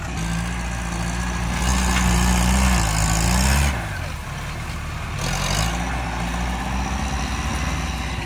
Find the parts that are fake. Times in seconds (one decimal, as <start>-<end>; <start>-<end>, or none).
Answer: none